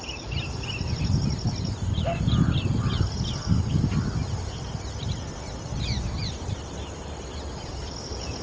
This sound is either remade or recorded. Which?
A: recorded